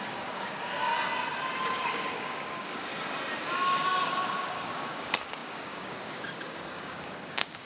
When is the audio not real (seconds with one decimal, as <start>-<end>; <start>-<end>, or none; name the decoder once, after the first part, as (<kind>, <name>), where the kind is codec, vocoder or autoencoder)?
0.0-0.9 (codec, DAC); 1.6-2.9; 3.4-7.7